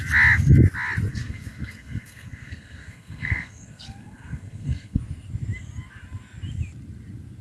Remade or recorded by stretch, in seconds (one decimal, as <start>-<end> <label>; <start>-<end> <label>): 0.0-1.1 recorded; 1.1-5.0 remade; 5.0-7.4 recorded